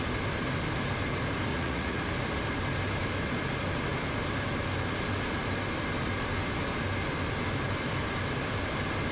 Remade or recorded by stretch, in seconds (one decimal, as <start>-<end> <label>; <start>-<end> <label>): 0.0-1.5 recorded; 1.5-2.0 remade; 2.0-9.1 recorded